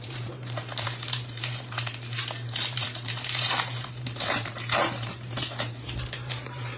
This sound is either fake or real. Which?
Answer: fake